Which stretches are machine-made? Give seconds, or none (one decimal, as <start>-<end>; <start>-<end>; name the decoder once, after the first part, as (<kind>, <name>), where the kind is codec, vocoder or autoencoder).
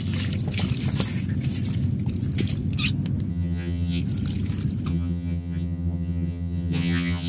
3.3-4.0 (vocoder, HiFi-GAN); 4.9-7.3